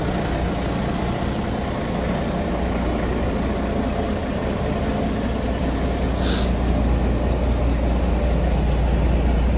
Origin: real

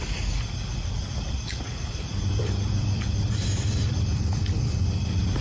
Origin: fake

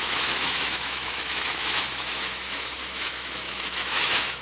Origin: fake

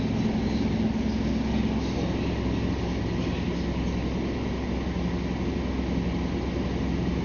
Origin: real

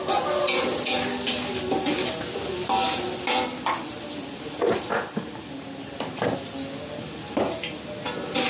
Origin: real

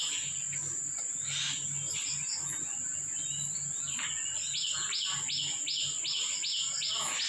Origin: real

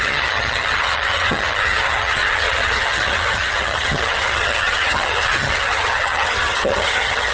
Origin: fake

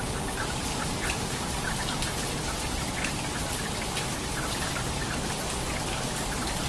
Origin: real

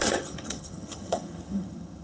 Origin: fake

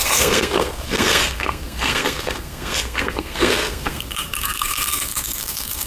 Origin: fake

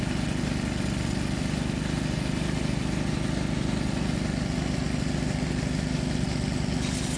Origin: real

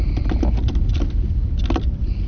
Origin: real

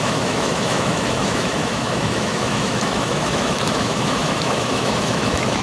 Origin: fake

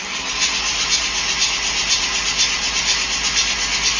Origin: real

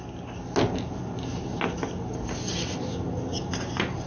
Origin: real